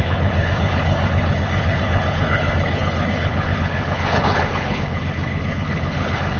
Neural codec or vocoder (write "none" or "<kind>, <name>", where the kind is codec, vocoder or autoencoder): codec, HILCodec